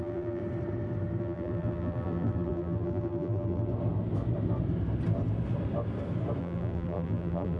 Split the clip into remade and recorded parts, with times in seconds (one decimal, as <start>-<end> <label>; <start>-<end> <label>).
0.0-0.4 remade; 0.4-1.2 recorded; 1.2-3.7 remade; 3.7-6.4 recorded; 6.4-7.6 remade